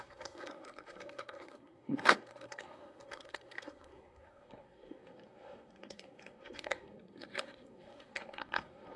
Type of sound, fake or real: fake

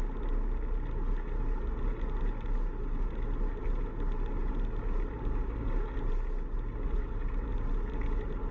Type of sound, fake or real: real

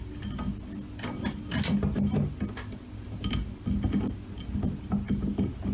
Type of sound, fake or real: real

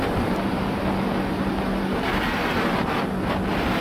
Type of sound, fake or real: real